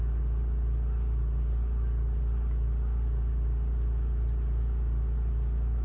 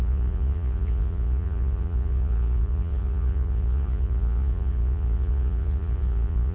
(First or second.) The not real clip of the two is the second